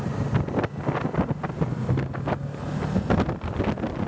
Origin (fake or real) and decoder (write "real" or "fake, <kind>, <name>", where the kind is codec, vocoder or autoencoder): real